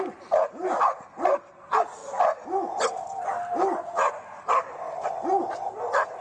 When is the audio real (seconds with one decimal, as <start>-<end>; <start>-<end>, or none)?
0.0-6.2

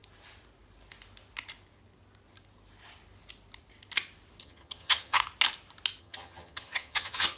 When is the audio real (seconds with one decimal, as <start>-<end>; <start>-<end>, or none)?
0.0-4.4; 5.2-6.0

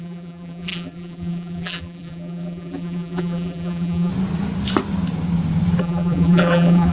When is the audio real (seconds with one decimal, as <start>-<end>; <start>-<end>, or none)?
4.1-5.8

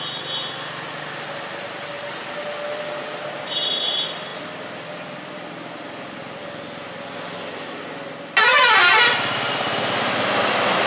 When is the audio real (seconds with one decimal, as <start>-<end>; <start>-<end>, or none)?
0.0-10.9

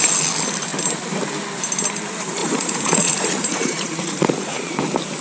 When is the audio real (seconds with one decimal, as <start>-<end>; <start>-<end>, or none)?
0.0-2.4; 4.7-5.2

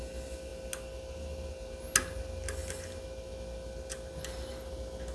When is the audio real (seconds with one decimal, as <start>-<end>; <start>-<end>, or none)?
0.0-5.1